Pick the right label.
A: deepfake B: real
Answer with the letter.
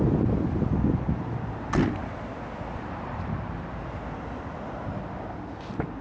B